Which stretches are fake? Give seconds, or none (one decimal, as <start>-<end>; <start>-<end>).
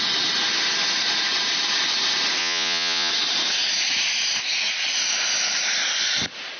2.4-3.1